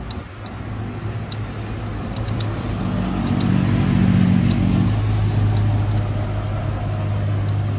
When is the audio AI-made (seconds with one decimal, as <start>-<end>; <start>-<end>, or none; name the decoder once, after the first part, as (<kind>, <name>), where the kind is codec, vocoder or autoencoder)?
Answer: 2.0-2.8 (vocoder, BigVGAN v2)